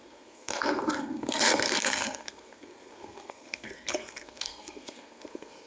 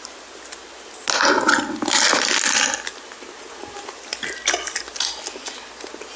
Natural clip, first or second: second